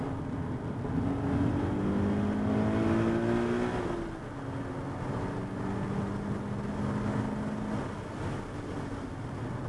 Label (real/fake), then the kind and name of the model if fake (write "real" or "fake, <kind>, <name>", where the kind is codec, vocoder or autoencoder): real